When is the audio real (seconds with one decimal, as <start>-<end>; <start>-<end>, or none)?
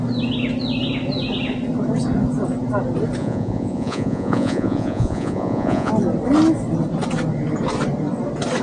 0.0-3.2; 5.9-8.6